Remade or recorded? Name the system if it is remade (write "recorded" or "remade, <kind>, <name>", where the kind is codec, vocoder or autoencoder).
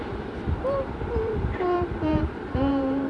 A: remade, vocoder, BigVGAN v2